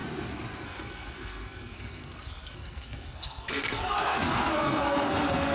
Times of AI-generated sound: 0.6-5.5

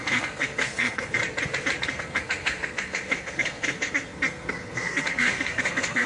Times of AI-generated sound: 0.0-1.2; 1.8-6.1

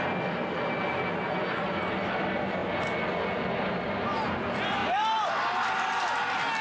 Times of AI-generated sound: none